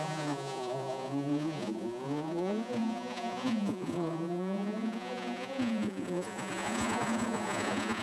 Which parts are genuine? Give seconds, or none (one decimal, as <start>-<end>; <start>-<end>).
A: none